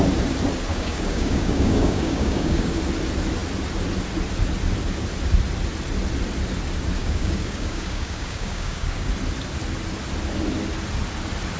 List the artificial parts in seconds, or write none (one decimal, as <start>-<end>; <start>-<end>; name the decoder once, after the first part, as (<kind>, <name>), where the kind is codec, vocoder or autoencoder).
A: 0.7-2.8 (codec, DAC); 7.0-9.1